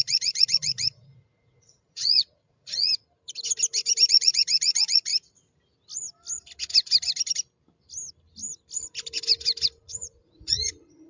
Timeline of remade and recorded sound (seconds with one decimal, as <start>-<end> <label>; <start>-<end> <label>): 0.0-2.9 remade; 2.9-4.1 recorded; 4.1-5.1 remade; 5.1-9.9 recorded; 9.9-11.1 remade